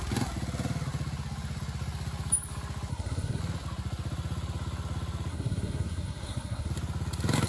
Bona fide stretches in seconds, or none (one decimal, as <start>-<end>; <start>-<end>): 0.0-2.9; 3.4-5.3; 6.7-7.5